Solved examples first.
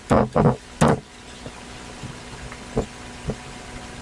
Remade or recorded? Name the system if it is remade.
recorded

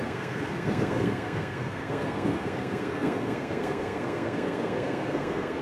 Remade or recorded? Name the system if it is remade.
remade, codec, SNAC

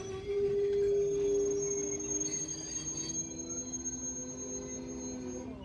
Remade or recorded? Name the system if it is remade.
recorded